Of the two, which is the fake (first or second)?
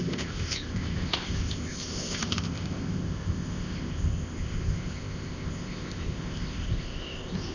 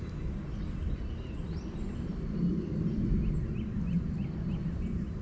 first